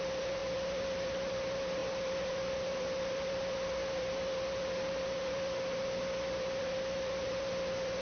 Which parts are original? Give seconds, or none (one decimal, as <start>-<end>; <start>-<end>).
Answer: 0.0-8.0